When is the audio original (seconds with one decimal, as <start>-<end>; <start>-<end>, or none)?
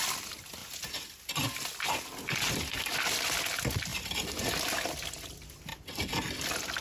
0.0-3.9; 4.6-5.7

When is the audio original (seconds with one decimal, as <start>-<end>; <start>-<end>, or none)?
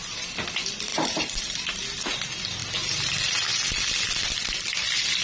0.0-0.9; 1.4-5.2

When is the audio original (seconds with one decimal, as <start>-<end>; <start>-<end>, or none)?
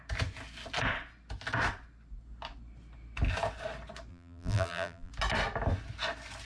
0.0-4.1; 5.1-6.4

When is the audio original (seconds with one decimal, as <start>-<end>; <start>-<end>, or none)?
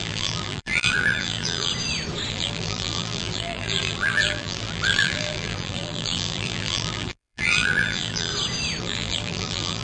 1.7-2.3; 8.3-8.8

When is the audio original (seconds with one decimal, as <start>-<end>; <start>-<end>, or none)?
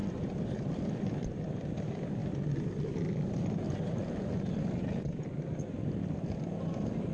0.7-7.1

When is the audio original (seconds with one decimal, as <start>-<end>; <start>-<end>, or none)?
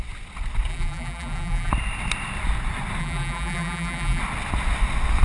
0.0-0.7; 1.7-3.0; 4.2-5.2